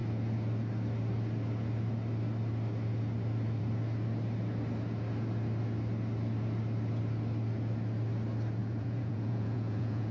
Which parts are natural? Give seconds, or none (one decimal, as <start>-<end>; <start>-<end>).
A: 0.0-8.6